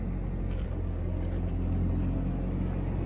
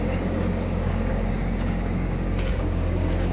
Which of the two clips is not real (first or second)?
second